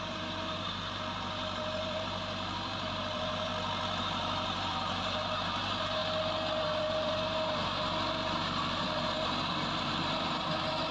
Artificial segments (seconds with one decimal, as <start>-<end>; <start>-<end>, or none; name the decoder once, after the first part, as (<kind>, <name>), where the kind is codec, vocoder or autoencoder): 0.0-3.5 (vocoder, BigVGAN v2); 4.0-6.0; 6.5-10.9